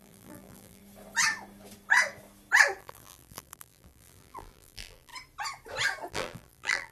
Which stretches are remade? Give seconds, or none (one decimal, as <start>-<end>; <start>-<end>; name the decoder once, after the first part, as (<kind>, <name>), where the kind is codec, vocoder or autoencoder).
0.0-0.8 (vocoder, BigVGAN v2); 2.8-5.1; 6.1-6.9